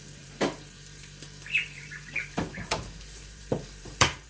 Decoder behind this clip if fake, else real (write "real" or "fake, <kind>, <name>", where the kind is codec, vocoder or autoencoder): fake, vocoder, BigVGAN v2